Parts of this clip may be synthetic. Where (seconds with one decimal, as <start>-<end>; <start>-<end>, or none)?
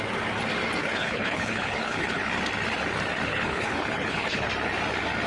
0.8-2.3; 3.3-4.5